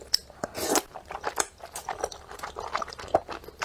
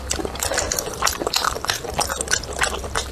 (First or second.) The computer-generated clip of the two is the second